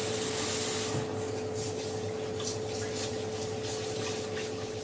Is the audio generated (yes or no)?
no